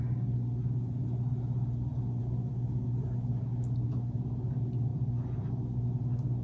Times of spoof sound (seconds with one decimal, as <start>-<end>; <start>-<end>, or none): 4.9-5.5

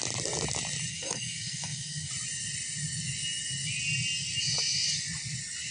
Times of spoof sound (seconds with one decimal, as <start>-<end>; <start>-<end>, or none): 0.9-2.1

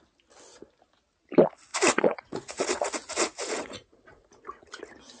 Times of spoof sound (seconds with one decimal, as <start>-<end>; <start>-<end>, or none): 1.7-4.8

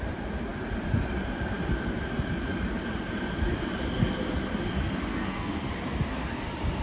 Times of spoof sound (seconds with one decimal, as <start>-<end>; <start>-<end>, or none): 5.1-5.7

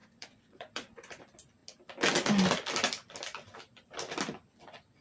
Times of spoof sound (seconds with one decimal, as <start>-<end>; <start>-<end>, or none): 0.0-1.2

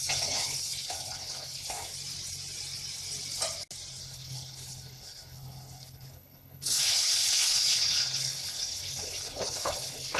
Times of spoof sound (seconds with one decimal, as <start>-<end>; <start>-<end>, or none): 0.0-1.9; 4.0-10.2

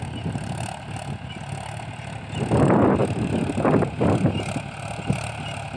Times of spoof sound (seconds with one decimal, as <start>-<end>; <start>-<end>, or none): 3.0-3.6